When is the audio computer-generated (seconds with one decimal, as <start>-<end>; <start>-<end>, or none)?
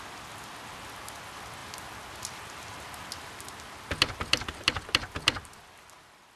none